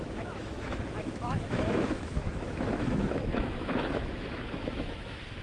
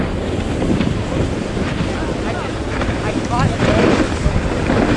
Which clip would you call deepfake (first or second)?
first